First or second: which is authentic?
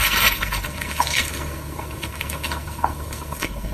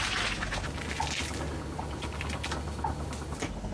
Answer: second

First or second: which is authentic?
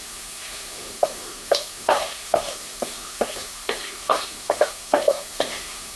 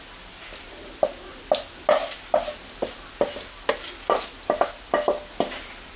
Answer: second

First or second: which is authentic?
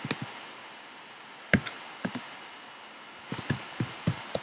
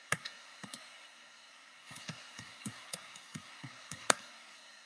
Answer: first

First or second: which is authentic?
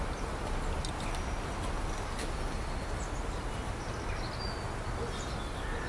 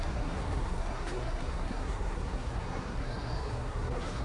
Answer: first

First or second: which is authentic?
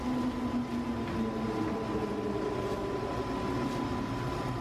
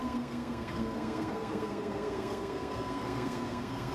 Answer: first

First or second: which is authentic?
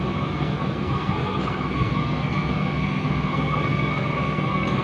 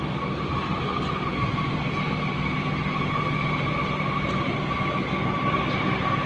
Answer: second